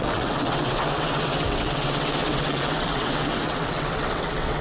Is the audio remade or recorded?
remade